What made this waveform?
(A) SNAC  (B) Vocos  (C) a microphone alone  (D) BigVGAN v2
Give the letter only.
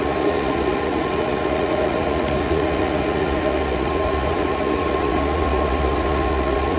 B